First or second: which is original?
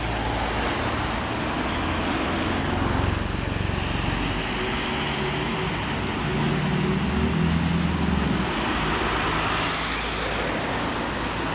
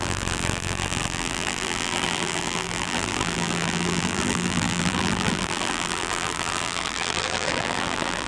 first